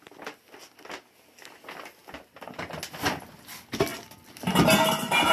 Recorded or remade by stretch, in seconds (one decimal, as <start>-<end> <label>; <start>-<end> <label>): 0.0-5.3 recorded